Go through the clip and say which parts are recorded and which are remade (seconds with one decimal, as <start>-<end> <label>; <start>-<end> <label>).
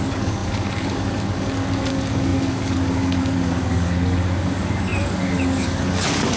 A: 0.0-6.4 remade